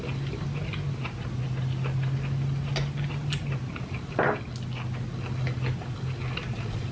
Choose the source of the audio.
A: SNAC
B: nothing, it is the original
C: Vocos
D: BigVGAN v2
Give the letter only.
B